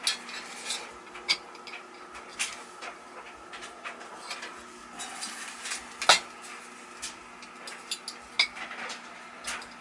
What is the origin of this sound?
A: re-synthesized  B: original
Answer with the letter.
B